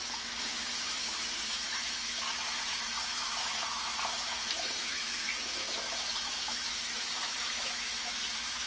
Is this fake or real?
fake